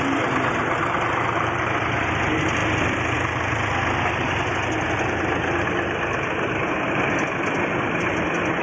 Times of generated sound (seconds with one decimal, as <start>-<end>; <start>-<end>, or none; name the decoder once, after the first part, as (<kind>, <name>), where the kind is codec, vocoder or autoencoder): none